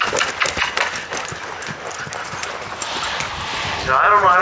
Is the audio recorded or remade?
recorded